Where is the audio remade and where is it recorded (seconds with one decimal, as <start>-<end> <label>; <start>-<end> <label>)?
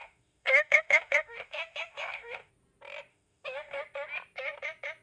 0.0-2.5 remade; 2.5-3.1 recorded; 3.1-3.8 remade; 3.8-5.0 recorded